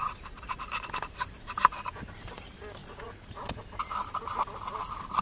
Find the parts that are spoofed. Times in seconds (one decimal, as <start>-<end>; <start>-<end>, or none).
2.8-3.6